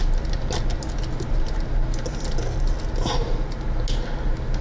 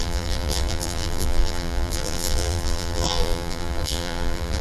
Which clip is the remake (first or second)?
second